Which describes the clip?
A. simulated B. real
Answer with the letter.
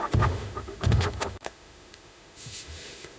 A